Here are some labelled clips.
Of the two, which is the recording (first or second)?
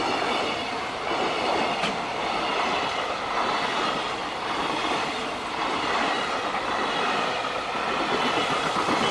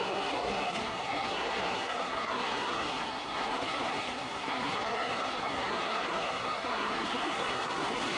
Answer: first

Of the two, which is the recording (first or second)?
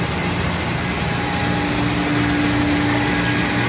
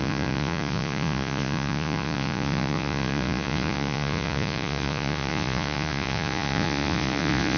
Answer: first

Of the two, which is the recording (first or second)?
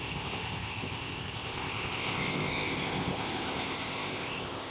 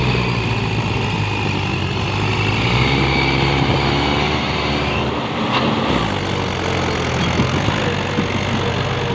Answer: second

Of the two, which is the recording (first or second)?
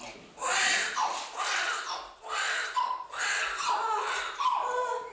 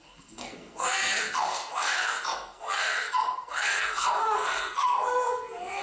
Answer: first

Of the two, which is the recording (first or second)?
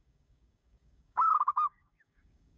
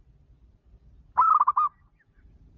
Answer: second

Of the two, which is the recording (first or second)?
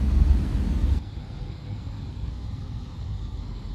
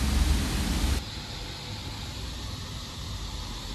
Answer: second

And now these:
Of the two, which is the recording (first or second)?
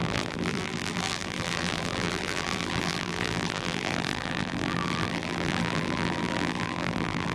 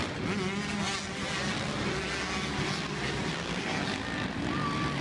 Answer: second